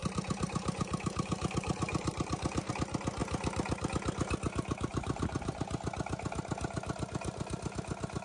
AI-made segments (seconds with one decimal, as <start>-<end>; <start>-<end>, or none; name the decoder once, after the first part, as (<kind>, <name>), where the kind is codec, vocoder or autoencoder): 0.0-2.7 (vocoder, BigVGAN v2); 3.2-3.9; 4.9-5.6